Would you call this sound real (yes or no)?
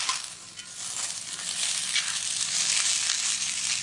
no